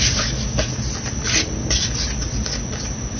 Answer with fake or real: real